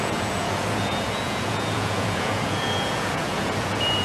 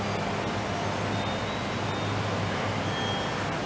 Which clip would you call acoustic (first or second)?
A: second